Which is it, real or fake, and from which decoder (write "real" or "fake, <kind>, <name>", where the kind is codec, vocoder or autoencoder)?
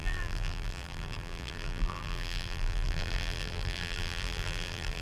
fake, vocoder, BigVGAN v2